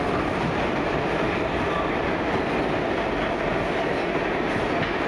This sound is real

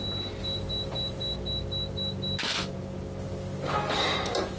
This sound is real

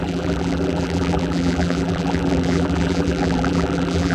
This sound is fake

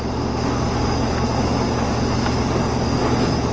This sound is real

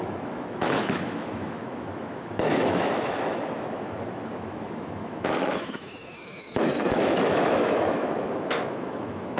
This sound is fake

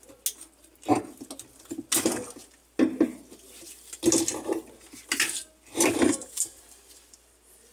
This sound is real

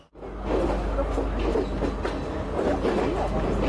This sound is real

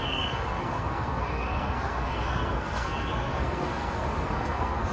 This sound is fake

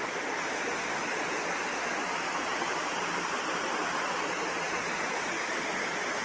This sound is fake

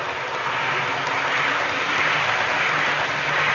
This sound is real